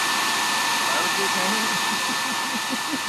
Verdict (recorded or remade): recorded